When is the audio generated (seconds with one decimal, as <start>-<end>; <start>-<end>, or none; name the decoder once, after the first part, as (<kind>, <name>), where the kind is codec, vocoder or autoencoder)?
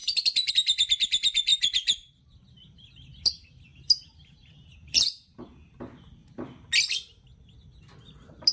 1.5-2.1 (vocoder, BigVGAN v2); 3.7-5.8